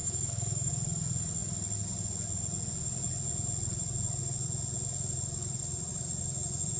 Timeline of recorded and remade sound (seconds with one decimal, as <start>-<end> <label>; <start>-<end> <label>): 0.0-0.7 remade; 0.7-6.8 recorded